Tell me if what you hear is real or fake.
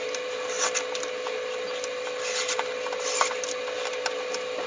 real